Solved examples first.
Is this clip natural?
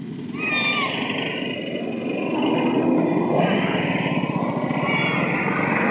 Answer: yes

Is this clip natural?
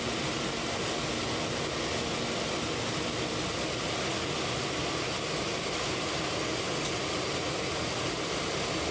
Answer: yes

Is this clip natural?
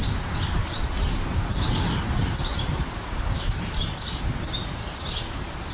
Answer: no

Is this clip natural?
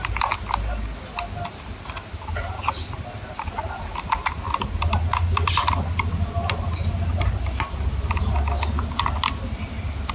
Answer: yes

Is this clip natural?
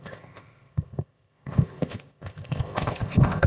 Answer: no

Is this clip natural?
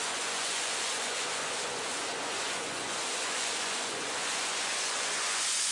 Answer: no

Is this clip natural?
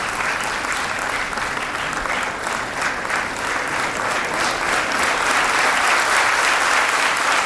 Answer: yes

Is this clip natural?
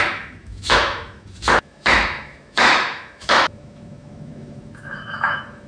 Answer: no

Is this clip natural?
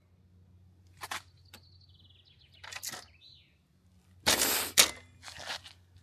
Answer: yes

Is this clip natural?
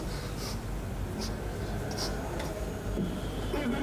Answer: yes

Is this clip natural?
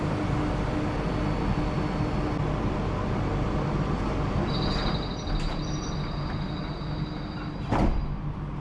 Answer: yes